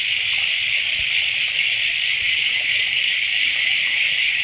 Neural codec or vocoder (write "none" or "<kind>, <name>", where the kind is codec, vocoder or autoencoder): none